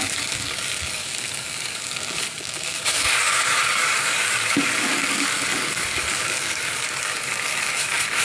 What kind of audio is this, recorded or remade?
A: remade